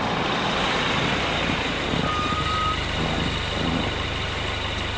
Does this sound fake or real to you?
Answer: real